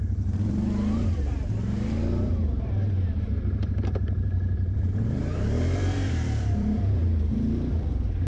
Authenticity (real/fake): fake